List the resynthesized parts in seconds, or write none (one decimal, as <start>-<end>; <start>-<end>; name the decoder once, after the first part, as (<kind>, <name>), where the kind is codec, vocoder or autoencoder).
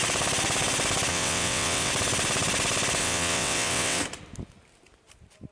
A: 1.1-1.9 (vocoder, WaveNeXt); 3.0-4.0